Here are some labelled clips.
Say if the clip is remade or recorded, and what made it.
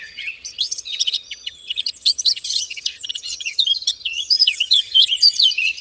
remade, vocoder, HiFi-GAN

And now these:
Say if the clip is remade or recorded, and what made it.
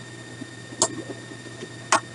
recorded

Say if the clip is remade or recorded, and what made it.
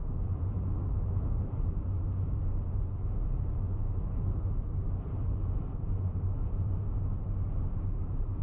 remade, vocoder, BigVGAN v2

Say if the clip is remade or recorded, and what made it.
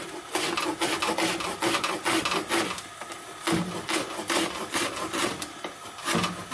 recorded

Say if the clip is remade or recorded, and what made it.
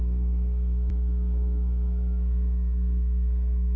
remade, codec, SNAC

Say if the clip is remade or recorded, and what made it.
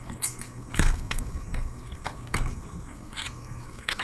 remade, codec, SNAC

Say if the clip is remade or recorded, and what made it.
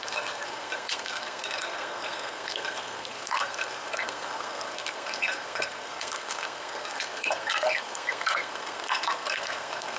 remade, codec, SNAC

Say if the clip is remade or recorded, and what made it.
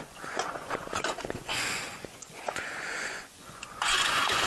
remade, vocoder, Vocos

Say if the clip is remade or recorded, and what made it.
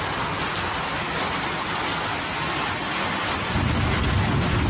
recorded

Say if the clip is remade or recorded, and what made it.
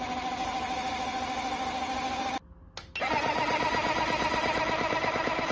recorded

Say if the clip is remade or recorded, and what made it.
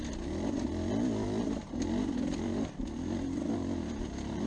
recorded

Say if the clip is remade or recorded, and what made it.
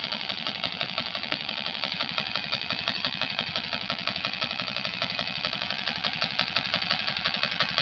remade, vocoder, WaveNeXt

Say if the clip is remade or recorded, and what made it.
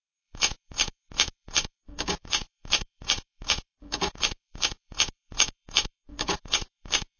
remade, codec, DAC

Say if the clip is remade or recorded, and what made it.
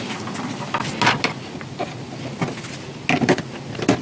recorded